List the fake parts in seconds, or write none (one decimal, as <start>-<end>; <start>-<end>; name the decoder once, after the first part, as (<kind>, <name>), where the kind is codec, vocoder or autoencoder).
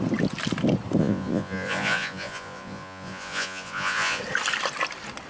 1.0-4.2 (vocoder, Vocos)